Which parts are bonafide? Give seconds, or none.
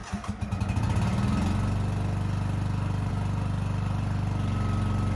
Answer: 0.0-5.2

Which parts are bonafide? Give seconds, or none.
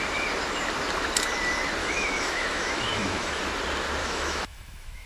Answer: 0.0-1.8; 3.4-4.0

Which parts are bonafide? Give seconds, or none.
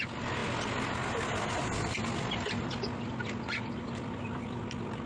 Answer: 0.0-5.1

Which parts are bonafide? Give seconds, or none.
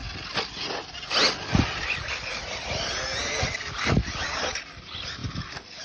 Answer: 0.0-5.8